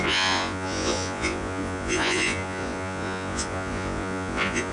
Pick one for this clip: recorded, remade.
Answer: remade